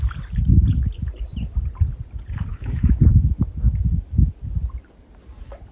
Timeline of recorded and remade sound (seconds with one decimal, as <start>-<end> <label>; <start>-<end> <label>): 0.0-2.5 recorded; 2.5-3.1 remade; 3.1-5.7 recorded